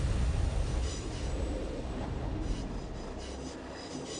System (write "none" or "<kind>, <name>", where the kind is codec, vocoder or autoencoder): none